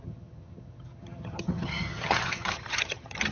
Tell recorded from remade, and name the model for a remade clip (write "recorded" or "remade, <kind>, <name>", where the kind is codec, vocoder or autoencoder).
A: remade, vocoder, HiFi-GAN